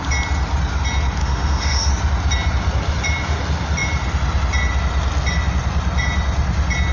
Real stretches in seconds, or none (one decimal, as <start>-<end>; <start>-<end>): 0.0-1.2; 1.9-6.9